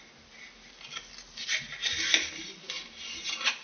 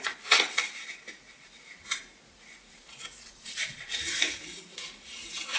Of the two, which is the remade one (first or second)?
second